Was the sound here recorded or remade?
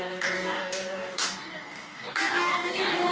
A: remade